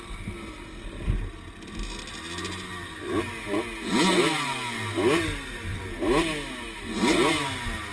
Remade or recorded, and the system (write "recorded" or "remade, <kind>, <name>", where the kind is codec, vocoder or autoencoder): recorded